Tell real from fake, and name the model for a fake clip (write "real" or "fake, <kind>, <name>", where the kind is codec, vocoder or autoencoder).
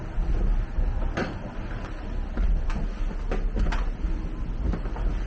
real